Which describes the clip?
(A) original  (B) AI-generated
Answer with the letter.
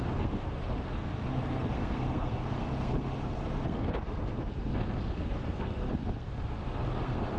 B